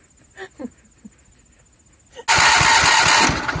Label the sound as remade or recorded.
recorded